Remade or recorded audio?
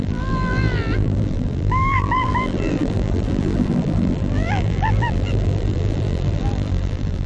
remade